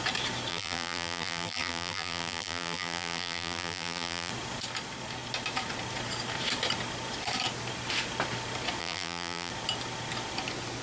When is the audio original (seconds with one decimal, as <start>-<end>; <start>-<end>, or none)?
0.0-0.5; 4.3-8.8; 9.5-10.8